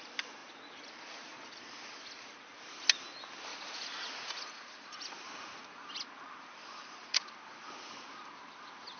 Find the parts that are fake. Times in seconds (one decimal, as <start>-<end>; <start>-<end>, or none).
3.5-5.9; 6.6-7.3